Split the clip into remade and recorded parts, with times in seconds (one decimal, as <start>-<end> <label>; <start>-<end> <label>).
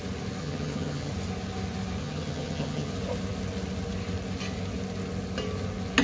0.0-0.4 recorded; 0.4-1.1 remade; 1.1-2.0 recorded; 2.0-2.9 remade; 2.9-6.0 recorded